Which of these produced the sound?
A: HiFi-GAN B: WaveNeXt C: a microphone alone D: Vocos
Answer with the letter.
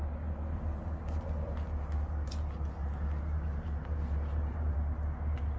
C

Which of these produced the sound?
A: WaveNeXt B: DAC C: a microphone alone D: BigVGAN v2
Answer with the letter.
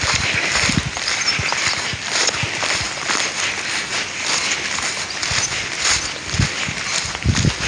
C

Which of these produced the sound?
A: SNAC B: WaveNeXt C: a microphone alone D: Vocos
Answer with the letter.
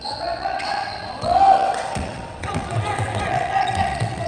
B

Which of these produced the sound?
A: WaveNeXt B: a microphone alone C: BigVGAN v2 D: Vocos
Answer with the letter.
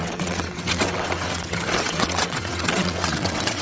A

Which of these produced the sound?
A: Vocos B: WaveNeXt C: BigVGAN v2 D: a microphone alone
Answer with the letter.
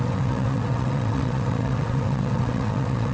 B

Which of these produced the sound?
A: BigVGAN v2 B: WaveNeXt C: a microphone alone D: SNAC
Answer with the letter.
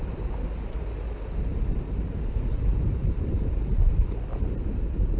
C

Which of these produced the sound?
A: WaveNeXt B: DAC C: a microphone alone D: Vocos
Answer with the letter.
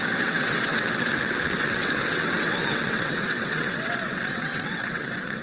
A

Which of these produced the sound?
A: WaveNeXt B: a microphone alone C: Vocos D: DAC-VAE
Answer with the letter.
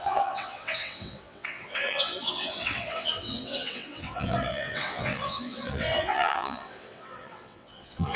A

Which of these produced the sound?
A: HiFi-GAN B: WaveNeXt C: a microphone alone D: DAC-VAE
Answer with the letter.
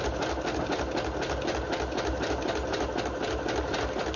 C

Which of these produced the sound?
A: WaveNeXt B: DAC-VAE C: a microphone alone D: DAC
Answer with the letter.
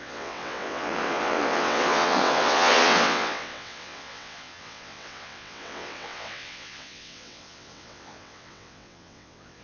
A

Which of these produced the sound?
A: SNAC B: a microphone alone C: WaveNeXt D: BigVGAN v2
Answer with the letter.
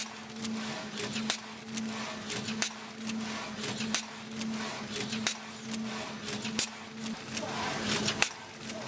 B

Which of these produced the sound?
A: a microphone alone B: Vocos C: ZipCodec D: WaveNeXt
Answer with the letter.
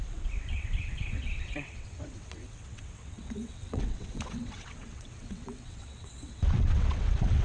D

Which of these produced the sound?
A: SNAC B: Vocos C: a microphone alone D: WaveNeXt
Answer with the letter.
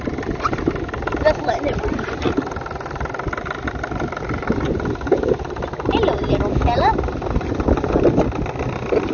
C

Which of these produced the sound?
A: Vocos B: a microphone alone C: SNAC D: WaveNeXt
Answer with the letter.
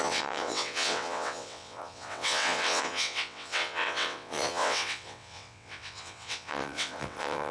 D